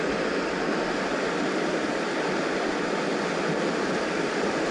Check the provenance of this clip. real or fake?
real